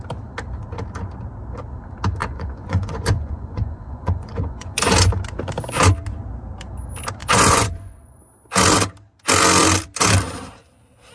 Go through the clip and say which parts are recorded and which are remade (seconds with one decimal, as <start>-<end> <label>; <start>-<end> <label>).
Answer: 0.0-2.2 recorded; 2.2-4.9 remade; 4.9-7.2 recorded; 7.2-8.2 remade; 8.2-11.1 recorded